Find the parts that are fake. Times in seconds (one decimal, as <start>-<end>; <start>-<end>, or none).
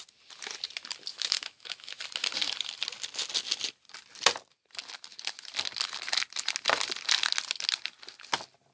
1.1-2.0